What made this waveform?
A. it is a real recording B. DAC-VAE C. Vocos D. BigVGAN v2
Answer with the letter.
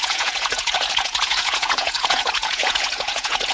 C